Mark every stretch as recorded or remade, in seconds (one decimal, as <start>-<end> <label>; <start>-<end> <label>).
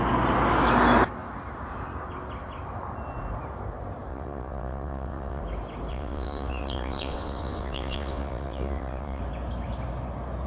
0.0-4.1 recorded; 4.1-5.4 remade; 5.4-5.9 recorded; 5.9-9.2 remade; 9.2-10.5 recorded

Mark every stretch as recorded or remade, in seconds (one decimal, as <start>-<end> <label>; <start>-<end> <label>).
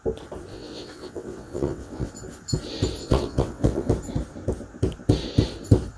0.0-0.5 recorded; 0.5-2.1 remade; 2.1-3.0 recorded; 3.0-3.9 remade; 3.9-6.0 recorded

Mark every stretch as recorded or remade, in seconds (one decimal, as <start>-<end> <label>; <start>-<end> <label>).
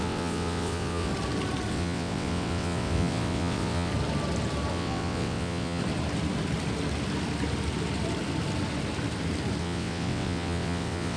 0.0-1.1 remade; 1.1-1.7 recorded; 1.7-3.9 remade; 3.9-4.7 recorded; 4.7-5.8 remade; 5.8-9.6 recorded; 9.6-11.2 remade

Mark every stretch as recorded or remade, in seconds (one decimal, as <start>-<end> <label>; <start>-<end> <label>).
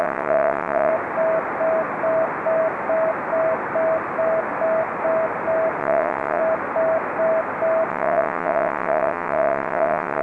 0.0-0.9 remade; 0.9-5.8 recorded; 5.8-6.4 remade; 6.4-7.9 recorded; 7.9-10.2 remade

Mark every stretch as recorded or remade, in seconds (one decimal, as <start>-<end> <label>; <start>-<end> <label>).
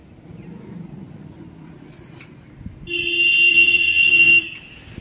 0.0-3.5 recorded; 3.5-4.3 remade; 4.3-5.0 recorded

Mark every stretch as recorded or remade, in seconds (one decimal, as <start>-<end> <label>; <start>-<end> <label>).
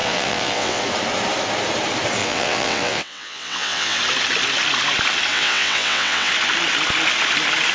0.0-0.8 remade; 0.8-2.2 recorded; 2.2-4.0 remade; 4.0-5.3 recorded; 5.3-6.3 remade; 6.3-7.7 recorded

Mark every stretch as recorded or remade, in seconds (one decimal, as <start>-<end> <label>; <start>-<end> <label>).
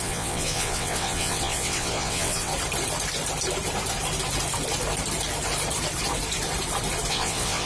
0.0-2.5 remade; 2.5-7.1 recorded; 7.1-7.7 remade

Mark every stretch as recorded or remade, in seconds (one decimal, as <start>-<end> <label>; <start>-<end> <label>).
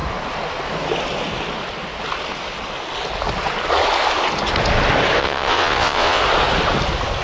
0.0-5.2 recorded; 5.2-6.2 remade; 6.2-7.2 recorded